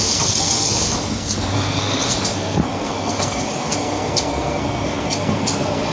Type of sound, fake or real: fake